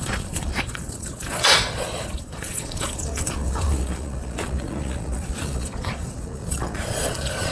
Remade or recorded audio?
remade